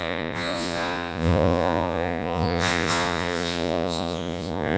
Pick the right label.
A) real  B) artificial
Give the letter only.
B